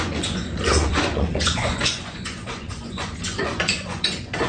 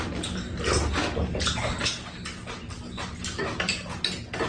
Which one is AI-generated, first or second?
first